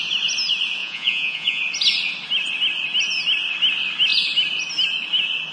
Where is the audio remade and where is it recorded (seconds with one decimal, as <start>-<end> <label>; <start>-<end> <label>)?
0.0-0.8 recorded; 0.8-1.6 remade; 1.6-5.5 recorded